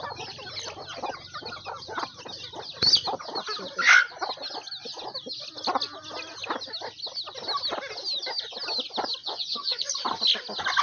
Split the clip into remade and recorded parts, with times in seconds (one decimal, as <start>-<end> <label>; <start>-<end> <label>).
0.0-9.2 recorded; 9.2-9.9 remade; 9.9-10.8 recorded